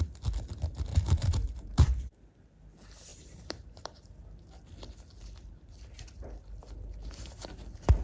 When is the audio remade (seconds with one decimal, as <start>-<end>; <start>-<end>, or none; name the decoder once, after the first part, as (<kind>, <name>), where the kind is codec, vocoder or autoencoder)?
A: 0.9-2.3 (vocoder, BigVGAN v2); 3.1-3.9